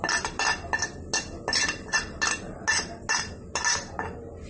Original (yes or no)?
yes